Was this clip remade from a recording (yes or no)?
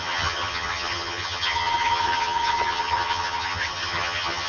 yes